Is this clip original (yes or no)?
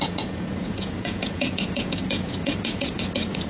no